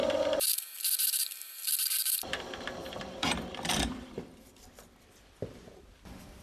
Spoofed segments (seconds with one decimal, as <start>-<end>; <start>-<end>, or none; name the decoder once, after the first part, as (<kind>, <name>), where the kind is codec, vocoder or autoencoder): 0.0-6.4 (vocoder, BigVGAN v2)